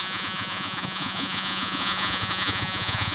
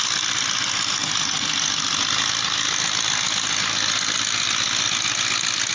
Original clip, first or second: second